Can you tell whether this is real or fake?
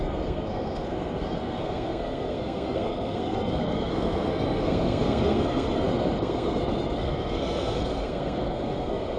fake